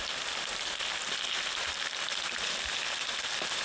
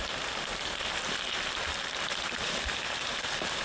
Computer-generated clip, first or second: second